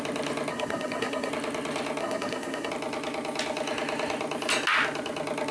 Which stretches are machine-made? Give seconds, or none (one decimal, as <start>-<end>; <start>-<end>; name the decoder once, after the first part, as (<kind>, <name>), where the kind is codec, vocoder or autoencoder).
0.5-1.3 (codec, SNAC); 2.0-2.7